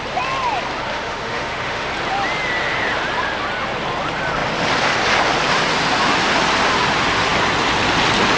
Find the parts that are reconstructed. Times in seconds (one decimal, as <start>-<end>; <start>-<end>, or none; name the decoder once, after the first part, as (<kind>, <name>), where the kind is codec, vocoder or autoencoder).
0.9-1.9 (autoencoder, DAC-VAE)